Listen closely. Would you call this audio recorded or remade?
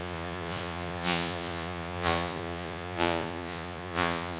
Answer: remade